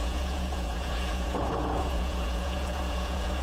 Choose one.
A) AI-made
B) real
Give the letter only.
A